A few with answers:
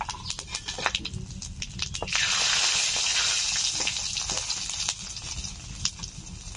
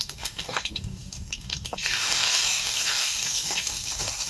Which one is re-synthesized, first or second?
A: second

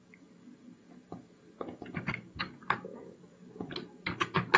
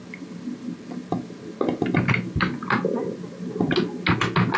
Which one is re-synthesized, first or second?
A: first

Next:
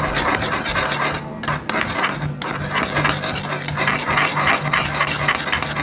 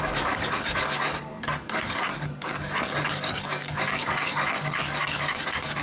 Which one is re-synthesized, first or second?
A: second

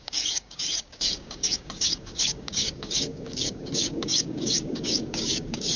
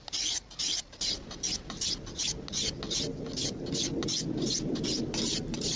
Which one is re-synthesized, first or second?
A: first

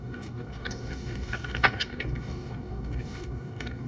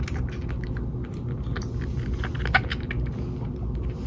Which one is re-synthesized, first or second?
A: first